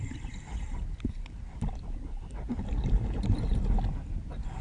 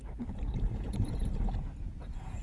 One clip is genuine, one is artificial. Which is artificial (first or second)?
second